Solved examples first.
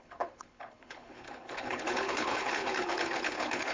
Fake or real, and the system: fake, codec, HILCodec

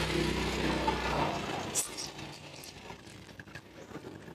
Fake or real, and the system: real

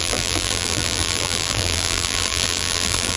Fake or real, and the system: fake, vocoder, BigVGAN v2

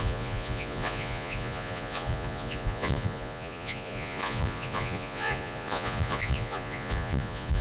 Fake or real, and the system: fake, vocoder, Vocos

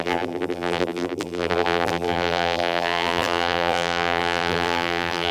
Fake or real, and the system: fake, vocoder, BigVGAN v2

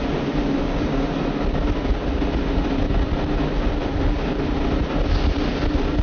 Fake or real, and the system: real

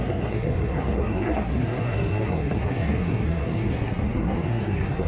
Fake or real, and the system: fake, codec, SNAC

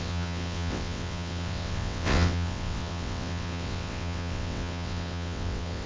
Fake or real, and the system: fake, vocoder, WaveNeXt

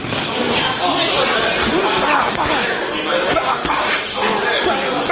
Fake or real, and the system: real